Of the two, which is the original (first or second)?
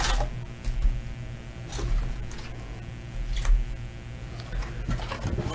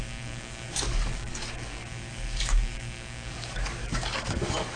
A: first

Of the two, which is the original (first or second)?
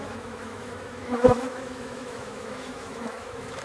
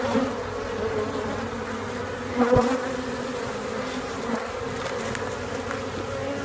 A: second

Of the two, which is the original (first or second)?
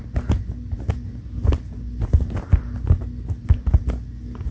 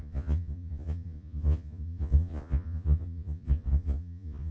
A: first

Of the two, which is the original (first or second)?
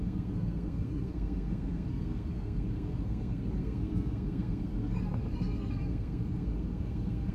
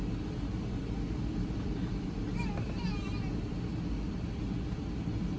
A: second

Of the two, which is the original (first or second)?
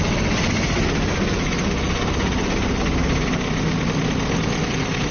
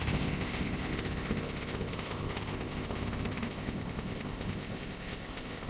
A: first